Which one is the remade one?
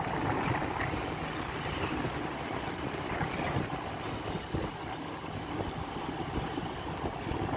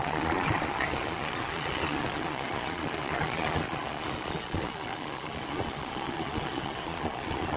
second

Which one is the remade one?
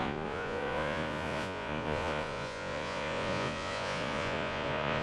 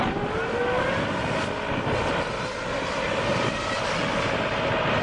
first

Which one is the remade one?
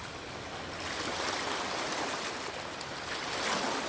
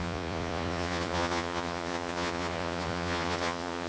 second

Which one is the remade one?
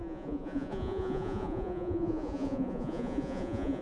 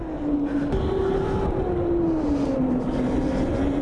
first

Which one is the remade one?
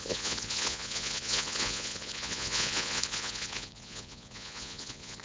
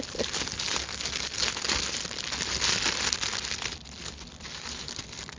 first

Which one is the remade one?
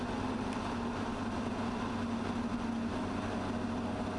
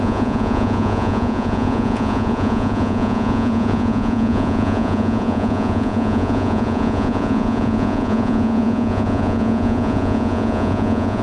second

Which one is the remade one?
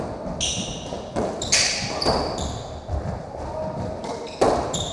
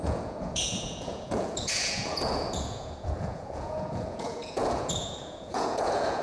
second